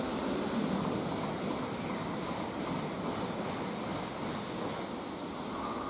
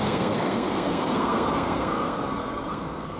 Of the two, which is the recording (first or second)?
first